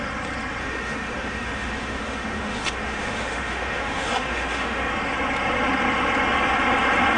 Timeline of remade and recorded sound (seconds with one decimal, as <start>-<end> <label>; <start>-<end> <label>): 0.0-0.6 recorded; 0.6-4.9 remade; 4.9-7.2 recorded